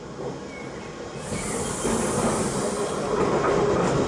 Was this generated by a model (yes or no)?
no